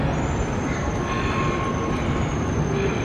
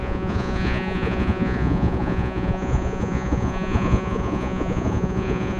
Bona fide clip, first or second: first